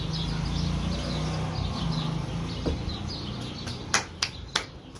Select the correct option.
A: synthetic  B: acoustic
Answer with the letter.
B